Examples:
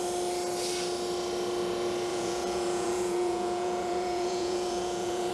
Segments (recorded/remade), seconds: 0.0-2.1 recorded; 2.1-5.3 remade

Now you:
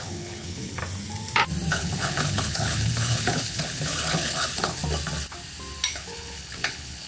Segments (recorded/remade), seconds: 0.0-0.8 remade; 0.8-1.7 recorded; 1.7-4.8 remade; 4.8-5.9 recorded; 5.9-7.1 remade

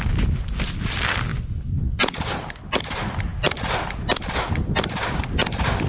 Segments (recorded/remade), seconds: 0.0-5.9 recorded

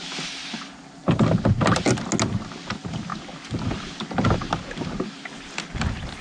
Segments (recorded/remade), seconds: 0.0-6.2 recorded